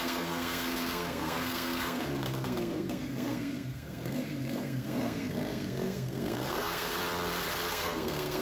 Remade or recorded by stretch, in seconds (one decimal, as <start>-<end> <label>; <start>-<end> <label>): 0.0-7.0 remade; 7.0-7.7 recorded; 7.7-8.4 remade